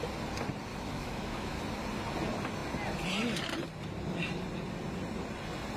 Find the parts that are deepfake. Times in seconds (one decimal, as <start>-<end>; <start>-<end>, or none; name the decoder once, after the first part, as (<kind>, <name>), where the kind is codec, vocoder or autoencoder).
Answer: 0.7-1.6 (autoencoder, DAC-VAE)

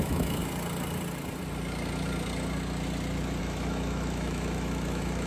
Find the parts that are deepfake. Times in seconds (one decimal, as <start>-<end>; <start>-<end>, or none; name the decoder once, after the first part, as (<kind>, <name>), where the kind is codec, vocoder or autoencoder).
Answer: 0.0-0.4 (autoencoder, DAC-VAE); 3.4-5.3

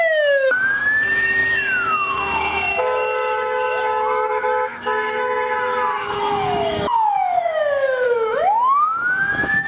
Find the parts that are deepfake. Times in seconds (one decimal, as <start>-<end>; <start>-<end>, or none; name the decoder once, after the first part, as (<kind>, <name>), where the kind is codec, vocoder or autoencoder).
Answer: 0.0-9.7 (autoencoder, DAC-VAE)

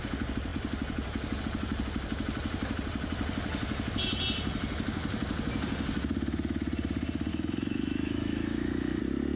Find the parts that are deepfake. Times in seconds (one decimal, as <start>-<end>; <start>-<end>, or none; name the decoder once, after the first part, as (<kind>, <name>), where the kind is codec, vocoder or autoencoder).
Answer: 7.3-9.0 (autoencoder, DAC-VAE)

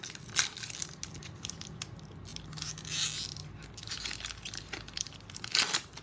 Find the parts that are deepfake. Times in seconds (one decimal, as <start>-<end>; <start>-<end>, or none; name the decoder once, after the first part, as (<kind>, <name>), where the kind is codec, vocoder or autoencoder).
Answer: none